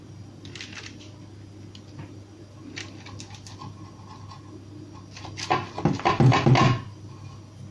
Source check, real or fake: real